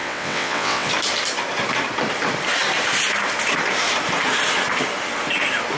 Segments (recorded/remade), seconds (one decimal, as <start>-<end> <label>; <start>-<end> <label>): 0.0-0.9 remade; 0.9-5.8 recorded

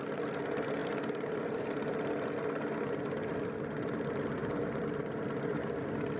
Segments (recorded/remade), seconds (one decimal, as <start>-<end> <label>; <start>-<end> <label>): 0.0-6.2 recorded

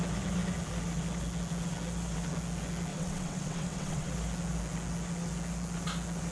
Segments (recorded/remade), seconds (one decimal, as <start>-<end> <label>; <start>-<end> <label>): 0.0-2.9 recorded; 2.9-4.1 remade; 4.1-6.3 recorded

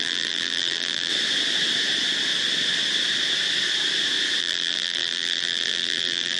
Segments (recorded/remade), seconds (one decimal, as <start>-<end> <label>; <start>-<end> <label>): 0.0-1.1 remade; 1.1-4.4 recorded; 4.4-6.4 remade

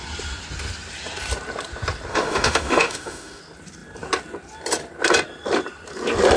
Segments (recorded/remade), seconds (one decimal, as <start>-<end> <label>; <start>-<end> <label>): 0.0-2.1 recorded; 2.1-3.4 remade; 3.4-6.4 recorded

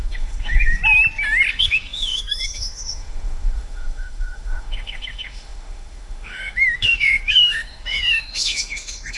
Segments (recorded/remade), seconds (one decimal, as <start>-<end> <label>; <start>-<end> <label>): 0.0-0.8 remade; 0.8-1.5 recorded; 1.5-9.2 remade